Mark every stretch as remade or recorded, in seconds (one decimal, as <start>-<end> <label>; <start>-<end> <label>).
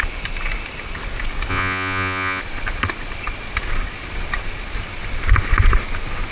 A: 0.0-1.5 recorded; 1.5-2.4 remade; 2.4-6.3 recorded